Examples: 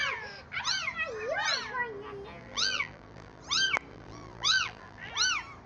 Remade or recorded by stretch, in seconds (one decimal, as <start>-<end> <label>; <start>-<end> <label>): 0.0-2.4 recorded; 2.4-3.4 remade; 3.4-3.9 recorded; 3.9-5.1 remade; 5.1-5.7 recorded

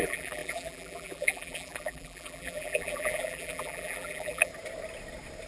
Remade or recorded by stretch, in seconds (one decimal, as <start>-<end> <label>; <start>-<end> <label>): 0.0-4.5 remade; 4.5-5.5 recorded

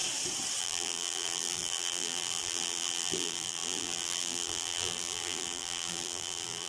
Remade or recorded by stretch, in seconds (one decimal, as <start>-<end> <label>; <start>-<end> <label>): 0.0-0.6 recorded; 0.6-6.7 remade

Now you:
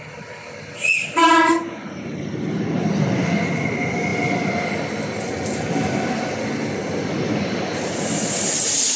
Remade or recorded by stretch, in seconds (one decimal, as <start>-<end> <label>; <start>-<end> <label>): 0.0-1.2 recorded; 1.2-1.8 remade; 1.8-9.0 recorded

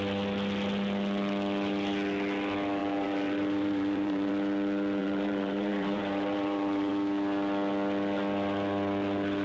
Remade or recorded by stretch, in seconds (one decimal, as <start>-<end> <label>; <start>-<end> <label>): 0.0-2.8 recorded; 2.8-4.3 remade; 4.3-5.0 recorded; 5.0-6.9 remade; 6.9-9.4 recorded

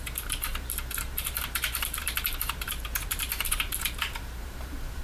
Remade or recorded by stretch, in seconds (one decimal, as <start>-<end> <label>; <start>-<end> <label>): 0.0-5.0 remade